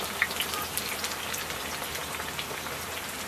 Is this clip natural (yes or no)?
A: yes